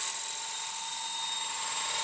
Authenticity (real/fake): real